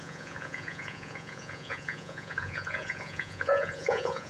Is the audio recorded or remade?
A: remade